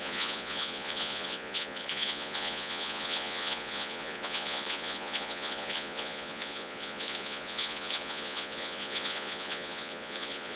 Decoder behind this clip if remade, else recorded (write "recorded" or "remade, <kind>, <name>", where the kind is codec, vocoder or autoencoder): remade, vocoder, Vocos